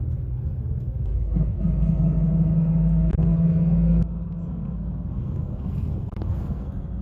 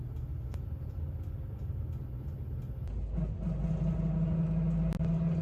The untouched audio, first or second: second